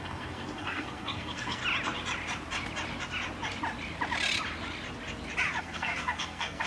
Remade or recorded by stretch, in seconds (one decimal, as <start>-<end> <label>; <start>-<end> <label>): 0.0-1.6 remade; 1.6-5.6 recorded; 5.6-6.7 remade